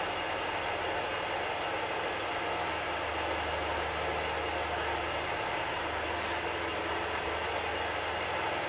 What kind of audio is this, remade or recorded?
recorded